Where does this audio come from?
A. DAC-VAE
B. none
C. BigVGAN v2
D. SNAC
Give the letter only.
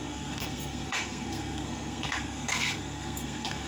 D